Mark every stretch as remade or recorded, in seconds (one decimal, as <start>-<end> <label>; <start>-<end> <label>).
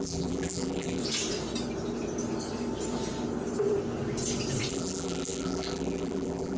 0.0-1.0 remade; 1.0-4.7 recorded; 4.7-6.6 remade